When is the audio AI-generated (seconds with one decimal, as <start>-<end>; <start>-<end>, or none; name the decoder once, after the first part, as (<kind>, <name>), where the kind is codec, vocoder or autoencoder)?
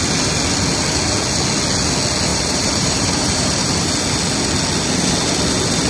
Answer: 2.3-3.9 (vocoder, BigVGAN v2)